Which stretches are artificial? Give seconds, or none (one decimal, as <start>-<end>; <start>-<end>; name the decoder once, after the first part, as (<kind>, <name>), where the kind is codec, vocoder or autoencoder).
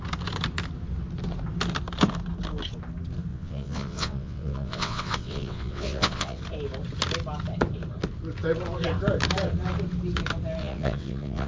3.3-6.4 (vocoder, WaveNeXt); 10.6-11.5